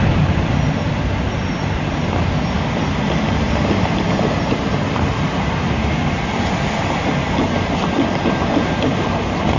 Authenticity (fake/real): real